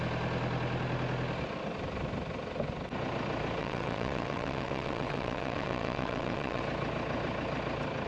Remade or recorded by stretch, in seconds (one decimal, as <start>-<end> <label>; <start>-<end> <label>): 0.0-3.6 recorded; 3.6-6.6 remade; 6.6-8.1 recorded